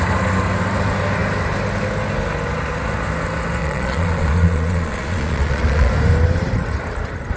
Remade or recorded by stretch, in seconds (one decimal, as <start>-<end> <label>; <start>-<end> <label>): 0.0-3.6 recorded; 3.6-5.9 remade; 5.9-7.4 recorded